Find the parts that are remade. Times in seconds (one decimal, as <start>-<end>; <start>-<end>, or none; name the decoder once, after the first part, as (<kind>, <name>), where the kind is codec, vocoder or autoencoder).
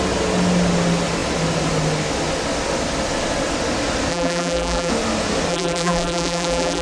4.1-4.9 (vocoder, BigVGAN v2); 5.5-6.8